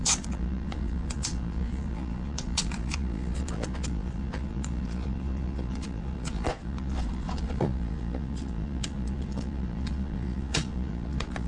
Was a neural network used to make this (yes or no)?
yes